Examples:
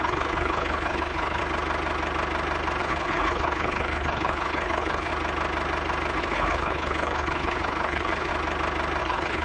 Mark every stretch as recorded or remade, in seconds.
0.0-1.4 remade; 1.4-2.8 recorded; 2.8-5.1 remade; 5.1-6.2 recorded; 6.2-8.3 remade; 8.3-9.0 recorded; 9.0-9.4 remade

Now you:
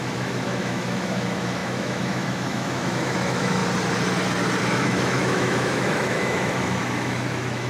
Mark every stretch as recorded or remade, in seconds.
0.0-3.6 remade; 3.6-4.6 recorded; 4.6-7.7 remade